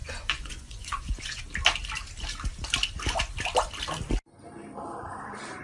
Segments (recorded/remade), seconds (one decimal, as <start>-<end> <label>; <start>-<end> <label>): 0.0-1.4 remade; 1.4-5.6 recorded